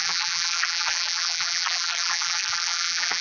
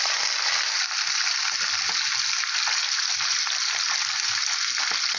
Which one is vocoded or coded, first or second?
first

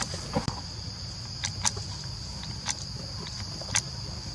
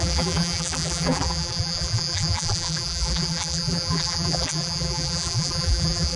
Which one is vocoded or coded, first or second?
second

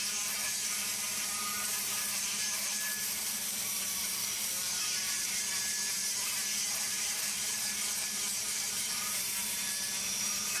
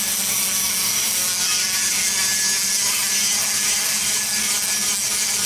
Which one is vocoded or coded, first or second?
first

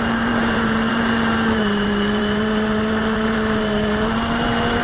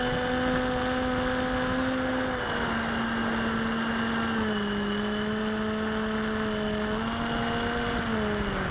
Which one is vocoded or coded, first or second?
first